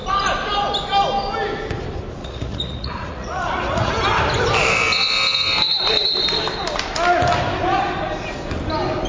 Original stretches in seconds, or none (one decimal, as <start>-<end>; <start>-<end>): 0.0-2.2; 3.9-9.1

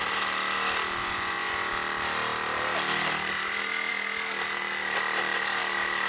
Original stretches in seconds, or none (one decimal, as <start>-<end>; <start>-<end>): 0.0-1.0; 1.7-6.1

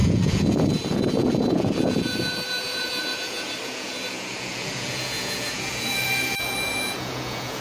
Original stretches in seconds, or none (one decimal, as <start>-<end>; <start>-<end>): none

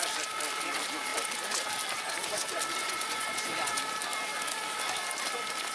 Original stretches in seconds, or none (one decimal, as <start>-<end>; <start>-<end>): 0.0-2.8; 3.8-5.7

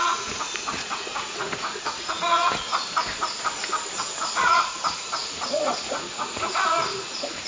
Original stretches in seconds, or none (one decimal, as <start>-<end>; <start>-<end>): 2.7-4.0

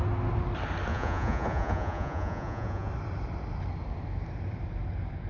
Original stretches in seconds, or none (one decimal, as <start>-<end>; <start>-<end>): 0.0-0.9; 2.9-5.3